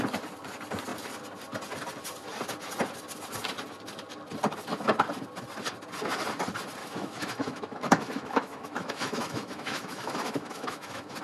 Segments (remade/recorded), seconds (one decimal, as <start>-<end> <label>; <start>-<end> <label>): 0.0-6.8 recorded; 6.8-11.2 remade